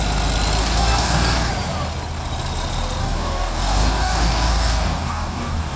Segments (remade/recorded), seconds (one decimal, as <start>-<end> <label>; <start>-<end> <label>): 0.0-0.6 recorded; 0.6-1.5 remade; 1.5-3.0 recorded; 3.0-5.8 remade